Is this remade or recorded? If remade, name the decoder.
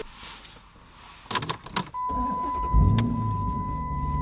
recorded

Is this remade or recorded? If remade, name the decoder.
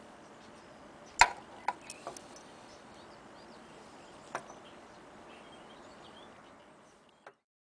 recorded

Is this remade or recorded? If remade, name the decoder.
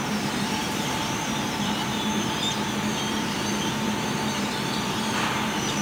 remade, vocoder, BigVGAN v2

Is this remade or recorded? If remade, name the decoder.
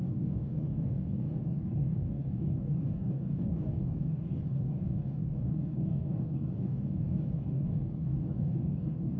remade, codec, DAC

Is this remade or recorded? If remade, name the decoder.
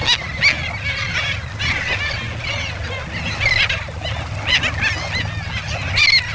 recorded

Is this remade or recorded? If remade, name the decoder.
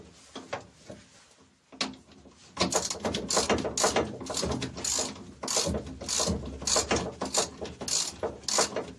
recorded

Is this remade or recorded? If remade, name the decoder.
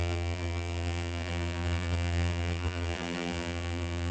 remade, vocoder, BigVGAN v2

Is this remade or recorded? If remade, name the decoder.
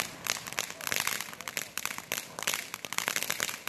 recorded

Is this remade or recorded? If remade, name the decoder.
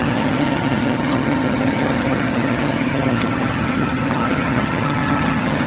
remade, vocoder, HiFi-GAN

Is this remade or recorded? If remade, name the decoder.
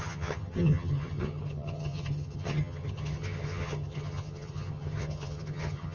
remade, vocoder, HiFi-GAN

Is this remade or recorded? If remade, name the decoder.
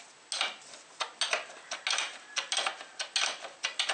recorded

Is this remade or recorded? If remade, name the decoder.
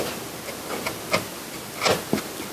recorded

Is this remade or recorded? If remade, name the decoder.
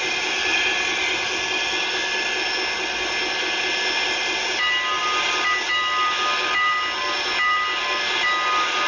recorded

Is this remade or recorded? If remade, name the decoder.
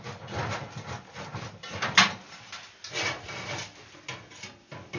recorded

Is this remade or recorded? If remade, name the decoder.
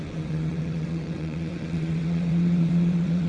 remade, vocoder, WaveNeXt